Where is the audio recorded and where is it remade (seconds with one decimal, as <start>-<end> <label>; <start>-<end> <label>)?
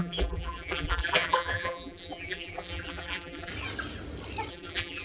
0.0-3.5 remade; 3.5-4.5 recorded; 4.5-5.0 remade